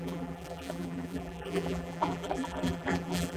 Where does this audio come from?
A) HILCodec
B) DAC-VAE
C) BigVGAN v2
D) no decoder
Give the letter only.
C